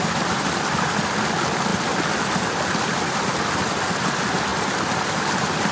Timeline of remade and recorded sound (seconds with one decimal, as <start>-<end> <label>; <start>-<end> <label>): 0.0-5.7 recorded